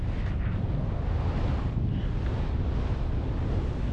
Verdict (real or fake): real